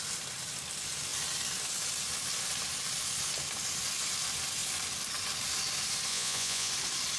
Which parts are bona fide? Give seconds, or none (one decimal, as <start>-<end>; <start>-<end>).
0.0-6.1; 6.7-7.2